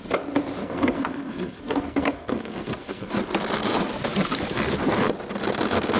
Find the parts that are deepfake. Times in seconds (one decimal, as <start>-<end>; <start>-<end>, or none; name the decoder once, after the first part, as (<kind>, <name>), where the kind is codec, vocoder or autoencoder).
0.6-3.1 (codec, SNAC)